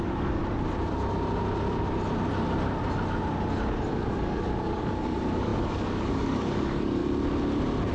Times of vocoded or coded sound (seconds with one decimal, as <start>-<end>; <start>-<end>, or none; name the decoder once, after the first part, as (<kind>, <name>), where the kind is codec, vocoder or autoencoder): 0.0-0.4 (codec, DAC); 3.9-7.0